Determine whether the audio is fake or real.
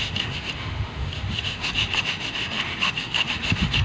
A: fake